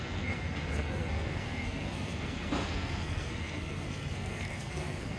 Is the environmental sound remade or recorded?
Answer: remade